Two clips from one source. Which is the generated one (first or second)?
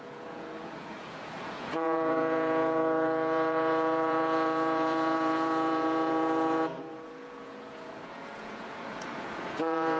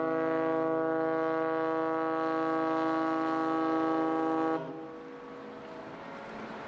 first